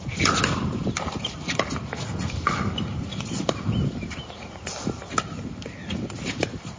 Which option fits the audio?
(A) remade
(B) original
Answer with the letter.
B